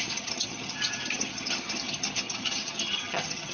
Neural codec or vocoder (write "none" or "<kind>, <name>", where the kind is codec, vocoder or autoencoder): vocoder, HiFi-GAN